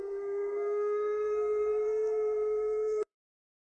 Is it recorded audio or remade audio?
remade